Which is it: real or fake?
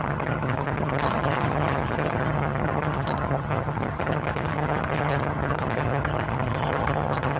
fake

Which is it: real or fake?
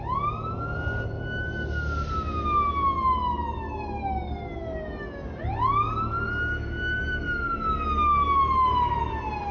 real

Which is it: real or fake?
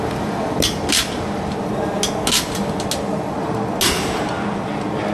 real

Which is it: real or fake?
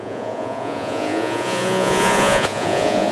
fake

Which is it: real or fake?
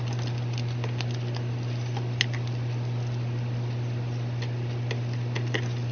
real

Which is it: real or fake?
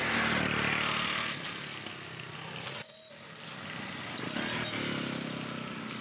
real